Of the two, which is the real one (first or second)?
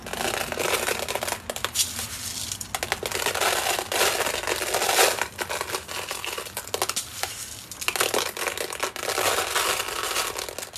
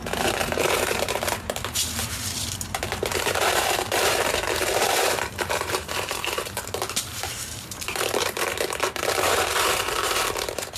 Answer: first